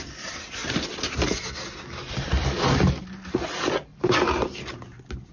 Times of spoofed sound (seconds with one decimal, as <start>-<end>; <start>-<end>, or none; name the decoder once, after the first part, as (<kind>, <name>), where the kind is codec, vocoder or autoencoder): 3.9-4.5 (vocoder, BigVGAN v2)